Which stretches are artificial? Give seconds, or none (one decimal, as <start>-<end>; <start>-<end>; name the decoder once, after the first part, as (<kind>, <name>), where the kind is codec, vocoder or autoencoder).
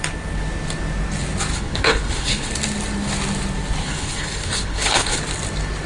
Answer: 1.5-2.5 (codec, HILCodec); 3.8-5.2